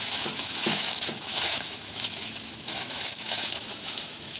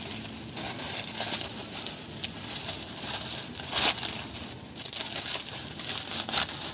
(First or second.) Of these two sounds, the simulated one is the first